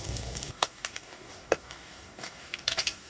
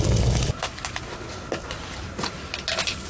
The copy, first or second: first